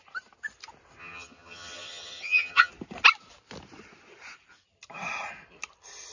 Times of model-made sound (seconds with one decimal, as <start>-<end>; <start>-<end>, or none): 1.0-2.7